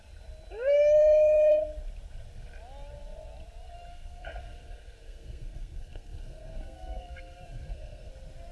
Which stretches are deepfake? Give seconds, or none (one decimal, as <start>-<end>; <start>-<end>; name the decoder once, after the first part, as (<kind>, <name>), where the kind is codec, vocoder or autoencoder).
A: 1.0-1.6 (codec, SNAC); 3.9-8.1

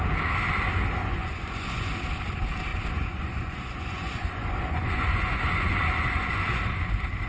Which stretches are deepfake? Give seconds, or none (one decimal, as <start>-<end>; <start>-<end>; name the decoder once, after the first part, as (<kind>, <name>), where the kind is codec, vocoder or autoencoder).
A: 1.0-1.9 (vocoder, Vocos); 2.7-6.8

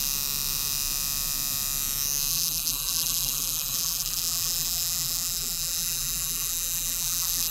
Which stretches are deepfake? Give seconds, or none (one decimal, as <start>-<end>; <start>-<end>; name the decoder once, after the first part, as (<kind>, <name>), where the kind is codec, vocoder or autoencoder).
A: 2.3-7.5 (vocoder, BigVGAN v2)

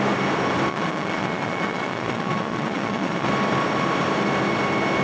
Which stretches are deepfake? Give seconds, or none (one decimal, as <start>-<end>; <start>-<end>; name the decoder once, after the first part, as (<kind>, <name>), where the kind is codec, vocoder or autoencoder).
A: 0.7-3.3 (vocoder, Vocos)

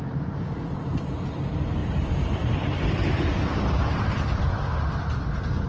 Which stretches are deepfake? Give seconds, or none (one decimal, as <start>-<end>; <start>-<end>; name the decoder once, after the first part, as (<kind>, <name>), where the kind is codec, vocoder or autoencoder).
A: 1.8-4.5 (vocoder, BigVGAN v2)

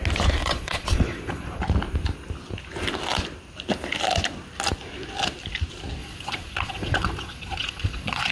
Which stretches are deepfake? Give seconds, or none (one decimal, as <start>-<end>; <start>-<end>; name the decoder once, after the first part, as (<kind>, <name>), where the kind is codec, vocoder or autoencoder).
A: 0.4-1.6 (vocoder, Vocos); 6.0-8.3

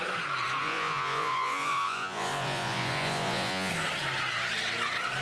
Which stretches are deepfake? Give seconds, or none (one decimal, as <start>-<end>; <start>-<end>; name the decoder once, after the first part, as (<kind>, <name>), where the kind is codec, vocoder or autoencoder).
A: 0.6-3.7 (vocoder, Vocos)